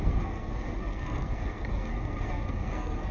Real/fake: fake